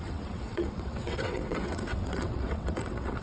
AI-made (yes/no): yes